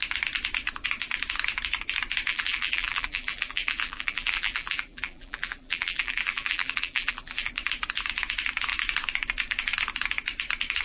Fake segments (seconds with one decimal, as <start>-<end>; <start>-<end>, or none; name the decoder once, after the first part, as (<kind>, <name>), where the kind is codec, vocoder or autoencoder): 2.3-7.5 (vocoder, BigVGAN v2)